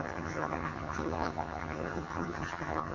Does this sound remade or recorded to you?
remade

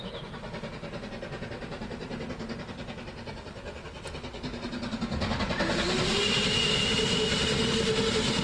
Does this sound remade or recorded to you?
recorded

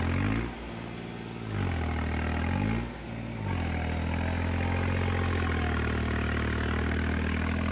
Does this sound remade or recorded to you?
recorded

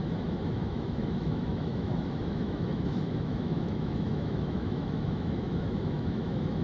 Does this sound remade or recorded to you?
remade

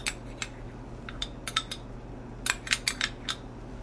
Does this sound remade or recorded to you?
recorded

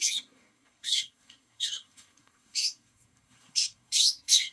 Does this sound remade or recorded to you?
remade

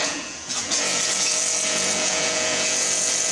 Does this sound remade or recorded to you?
remade